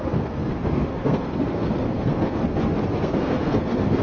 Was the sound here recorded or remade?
remade